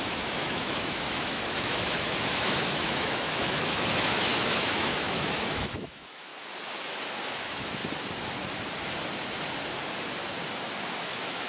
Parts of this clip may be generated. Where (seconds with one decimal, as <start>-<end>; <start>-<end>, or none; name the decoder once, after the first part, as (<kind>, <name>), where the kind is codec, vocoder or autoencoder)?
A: 0.0-6.3 (autoencoder, DAC-VAE); 7.3-7.8; 11.0-11.5